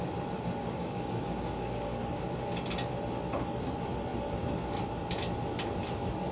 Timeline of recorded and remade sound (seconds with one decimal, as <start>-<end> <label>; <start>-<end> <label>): 0.0-0.6 recorded; 0.6-2.2 remade; 2.2-6.3 recorded